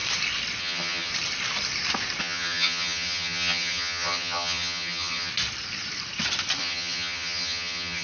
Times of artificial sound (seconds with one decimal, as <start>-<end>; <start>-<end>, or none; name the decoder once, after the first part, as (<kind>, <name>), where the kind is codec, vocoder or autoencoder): 0.6-1.1 (vocoder, HiFi-GAN); 2.2-5.3; 6.6-8.0